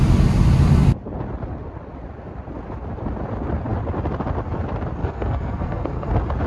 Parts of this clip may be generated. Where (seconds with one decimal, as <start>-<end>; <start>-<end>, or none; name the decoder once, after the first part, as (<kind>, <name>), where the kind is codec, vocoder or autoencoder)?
5.0-6.1 (codec, SNAC)